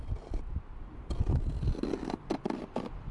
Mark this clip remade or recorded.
remade